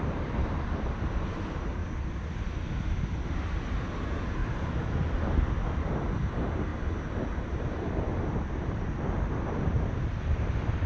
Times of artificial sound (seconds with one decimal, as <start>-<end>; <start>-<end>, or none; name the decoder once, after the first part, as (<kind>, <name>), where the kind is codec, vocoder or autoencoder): 0.0-1.8 (vocoder, BigVGAN v2); 3.2-4.4; 6.3-6.7; 7.4-10.9